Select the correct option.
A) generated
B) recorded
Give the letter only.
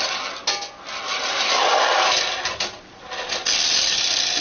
B